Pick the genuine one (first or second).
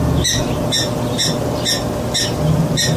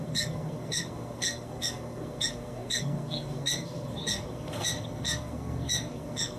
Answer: first